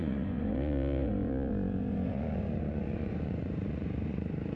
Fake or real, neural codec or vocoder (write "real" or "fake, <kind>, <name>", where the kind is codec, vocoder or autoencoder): fake, vocoder, Vocos